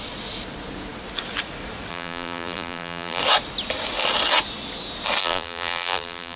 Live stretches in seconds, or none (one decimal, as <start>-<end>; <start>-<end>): 0.0-1.9; 3.2-5.2